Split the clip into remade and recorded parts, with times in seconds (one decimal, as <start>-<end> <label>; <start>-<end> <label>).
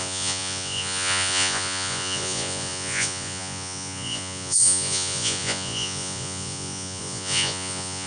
0.0-8.1 remade